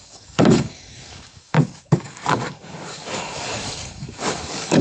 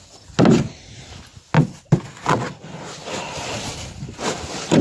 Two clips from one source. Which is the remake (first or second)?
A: first